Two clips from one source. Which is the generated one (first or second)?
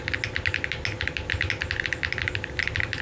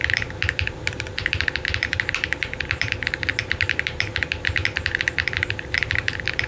second